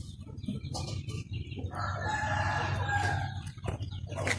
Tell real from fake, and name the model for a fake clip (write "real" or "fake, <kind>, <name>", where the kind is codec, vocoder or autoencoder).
real